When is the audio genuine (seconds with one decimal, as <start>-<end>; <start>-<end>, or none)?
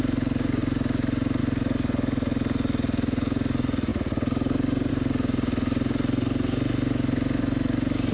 0.0-8.1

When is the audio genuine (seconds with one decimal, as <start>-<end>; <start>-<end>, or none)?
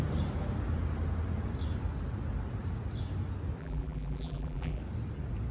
0.0-3.6; 4.8-5.5